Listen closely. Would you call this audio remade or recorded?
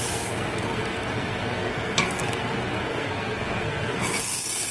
remade